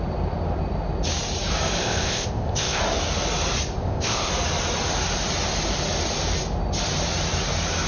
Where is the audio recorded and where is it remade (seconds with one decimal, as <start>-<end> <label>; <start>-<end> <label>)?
0.0-1.8 recorded; 1.8-2.8 remade; 2.8-3.8 recorded; 3.8-4.3 remade; 4.3-7.9 recorded